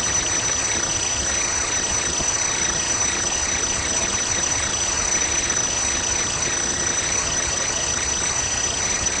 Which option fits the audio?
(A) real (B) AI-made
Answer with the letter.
B